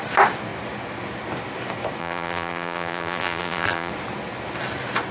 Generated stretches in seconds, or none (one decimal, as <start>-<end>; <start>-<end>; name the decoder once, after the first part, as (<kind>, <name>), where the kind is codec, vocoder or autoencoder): 2.0-3.9 (vocoder, BigVGAN v2)